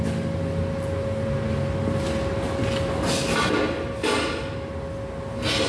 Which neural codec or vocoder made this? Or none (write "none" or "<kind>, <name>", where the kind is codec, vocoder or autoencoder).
none